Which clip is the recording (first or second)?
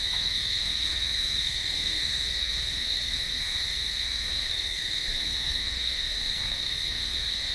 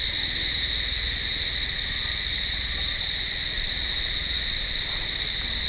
second